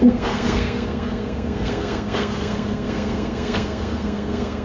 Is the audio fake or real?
fake